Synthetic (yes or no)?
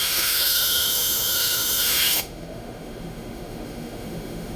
yes